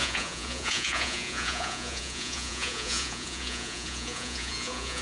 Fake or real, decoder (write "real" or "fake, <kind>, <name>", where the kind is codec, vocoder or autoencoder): fake, vocoder, Vocos